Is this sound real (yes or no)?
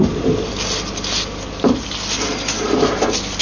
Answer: yes